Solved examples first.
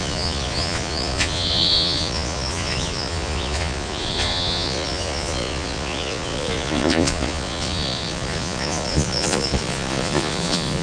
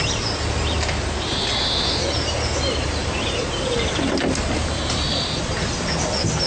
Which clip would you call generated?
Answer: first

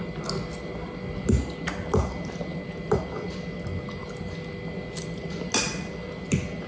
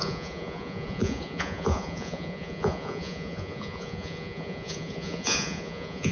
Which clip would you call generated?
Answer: second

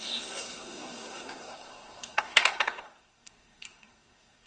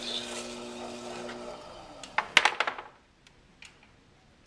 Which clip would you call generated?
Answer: first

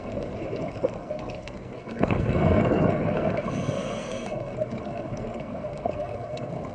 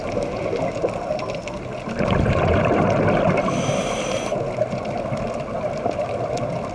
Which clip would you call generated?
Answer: first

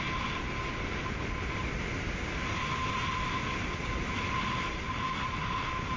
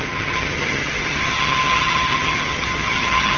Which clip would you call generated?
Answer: second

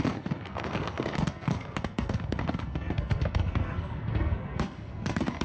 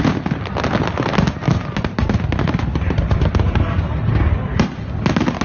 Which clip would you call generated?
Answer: first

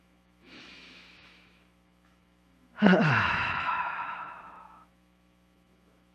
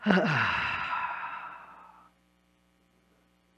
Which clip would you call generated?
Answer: first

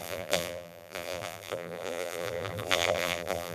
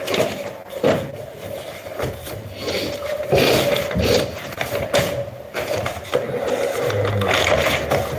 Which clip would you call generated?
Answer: first